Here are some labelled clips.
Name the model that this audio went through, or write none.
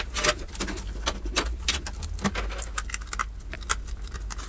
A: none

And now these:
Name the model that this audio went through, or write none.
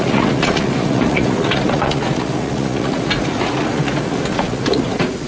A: vocoder, Vocos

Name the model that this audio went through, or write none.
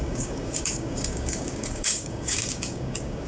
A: codec, DAC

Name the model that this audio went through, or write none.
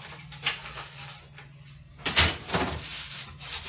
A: none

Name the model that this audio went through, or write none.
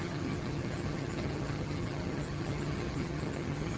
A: vocoder, HiFi-GAN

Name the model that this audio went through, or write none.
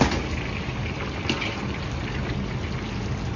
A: none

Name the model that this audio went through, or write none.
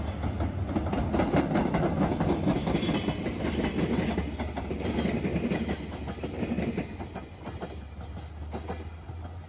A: none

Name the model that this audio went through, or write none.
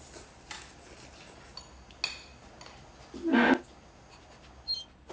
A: none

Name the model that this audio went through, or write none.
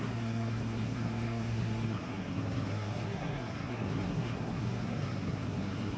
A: codec, SNAC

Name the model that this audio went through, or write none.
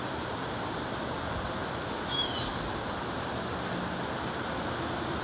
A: vocoder, BigVGAN v2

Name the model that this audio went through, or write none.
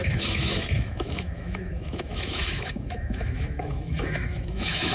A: autoencoder, DAC-VAE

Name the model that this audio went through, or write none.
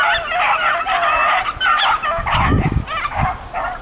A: none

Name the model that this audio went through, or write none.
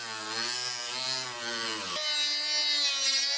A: none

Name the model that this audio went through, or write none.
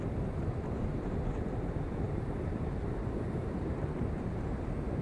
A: vocoder, BigVGAN v2